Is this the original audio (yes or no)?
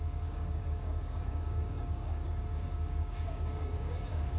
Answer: no